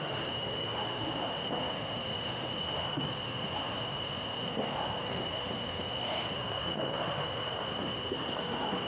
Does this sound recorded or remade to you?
remade